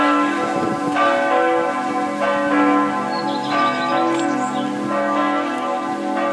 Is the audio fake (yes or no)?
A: no